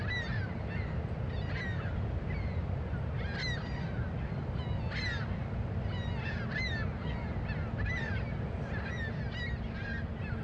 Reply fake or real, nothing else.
real